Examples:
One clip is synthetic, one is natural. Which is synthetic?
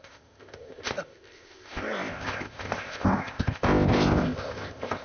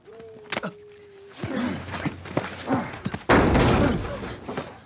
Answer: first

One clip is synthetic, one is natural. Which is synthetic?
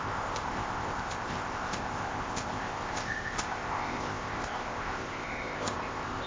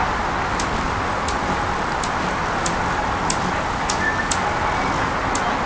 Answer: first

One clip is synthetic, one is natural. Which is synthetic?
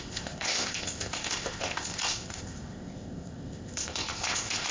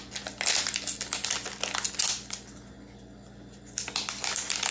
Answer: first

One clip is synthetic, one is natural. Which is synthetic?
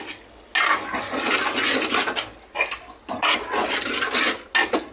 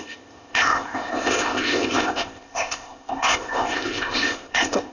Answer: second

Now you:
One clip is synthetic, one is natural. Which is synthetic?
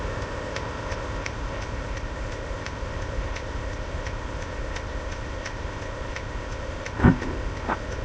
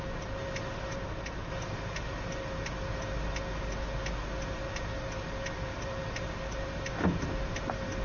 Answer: first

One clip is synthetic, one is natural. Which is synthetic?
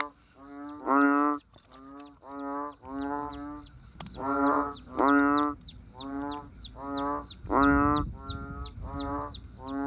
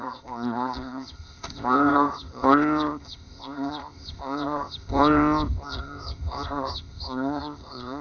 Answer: second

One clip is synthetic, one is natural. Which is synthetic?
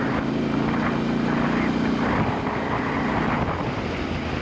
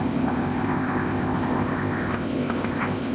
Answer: second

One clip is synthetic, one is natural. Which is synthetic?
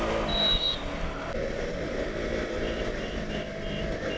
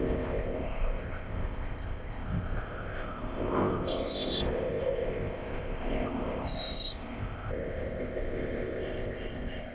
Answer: second